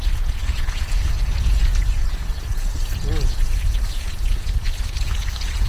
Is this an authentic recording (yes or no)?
no